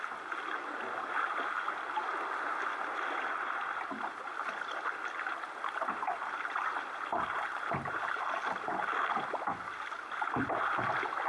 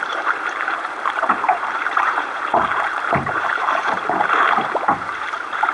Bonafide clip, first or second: first